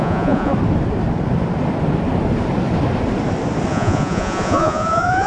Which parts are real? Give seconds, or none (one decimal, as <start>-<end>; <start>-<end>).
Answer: 0.5-3.7